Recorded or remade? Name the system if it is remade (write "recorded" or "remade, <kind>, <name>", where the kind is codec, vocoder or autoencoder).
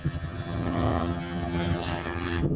remade, vocoder, HiFi-GAN